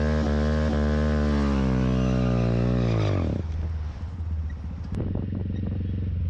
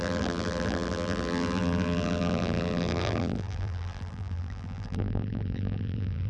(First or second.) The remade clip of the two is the second